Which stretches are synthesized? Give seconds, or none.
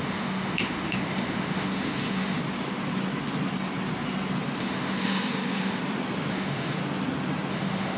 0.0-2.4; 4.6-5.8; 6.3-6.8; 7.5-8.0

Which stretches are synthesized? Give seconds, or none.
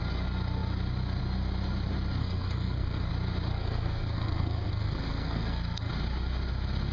2.2-3.1; 3.5-5.9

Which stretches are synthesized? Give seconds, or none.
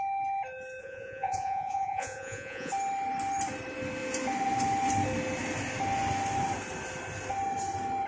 0.8-2.7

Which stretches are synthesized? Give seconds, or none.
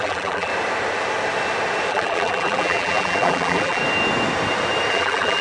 0.0-0.5; 1.9-3.8; 4.9-5.4